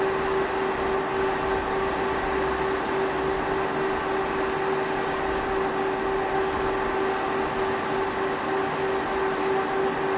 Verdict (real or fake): real